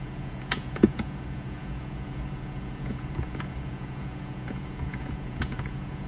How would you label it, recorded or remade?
remade